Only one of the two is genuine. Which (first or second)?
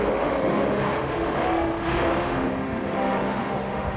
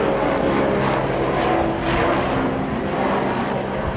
second